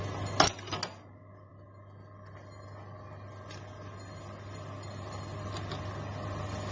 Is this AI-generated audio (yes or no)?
no